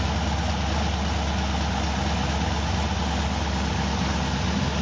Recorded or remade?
recorded